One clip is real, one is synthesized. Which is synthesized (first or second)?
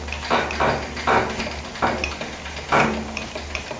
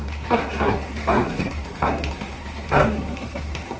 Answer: second